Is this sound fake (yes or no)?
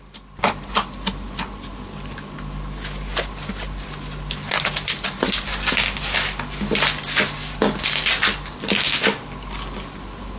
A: no